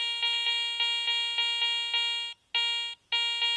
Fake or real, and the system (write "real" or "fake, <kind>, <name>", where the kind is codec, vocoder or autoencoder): real